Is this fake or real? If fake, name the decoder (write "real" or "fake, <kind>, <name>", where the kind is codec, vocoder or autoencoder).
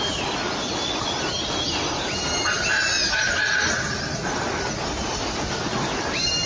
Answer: real